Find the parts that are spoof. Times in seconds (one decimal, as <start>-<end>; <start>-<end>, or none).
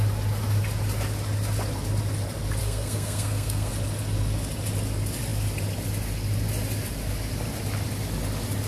2.6-3.7